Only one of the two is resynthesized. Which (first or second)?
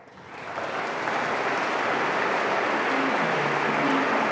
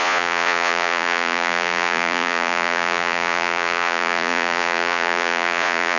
second